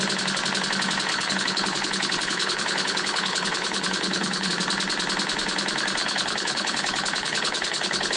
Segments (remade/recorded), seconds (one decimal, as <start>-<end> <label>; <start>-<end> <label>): 0.0-1.1 recorded; 1.1-4.5 remade; 4.5-6.0 recorded; 6.0-8.2 remade